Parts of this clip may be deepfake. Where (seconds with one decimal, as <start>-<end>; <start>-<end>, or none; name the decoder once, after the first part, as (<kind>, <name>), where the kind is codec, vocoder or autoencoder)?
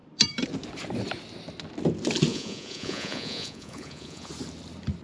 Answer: 2.3-4.3 (vocoder, Vocos)